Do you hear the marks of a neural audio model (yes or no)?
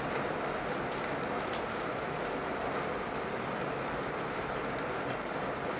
no